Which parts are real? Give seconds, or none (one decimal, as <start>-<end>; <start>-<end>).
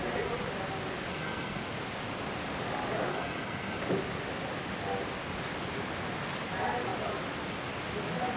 0.0-1.1; 1.6-3.1; 3.8-8.4